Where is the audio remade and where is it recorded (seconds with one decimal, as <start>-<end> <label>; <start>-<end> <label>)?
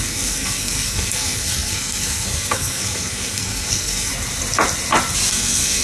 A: 0.0-4.1 remade; 4.1-5.3 recorded; 5.3-5.8 remade